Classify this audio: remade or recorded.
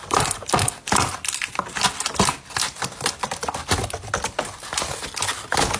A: recorded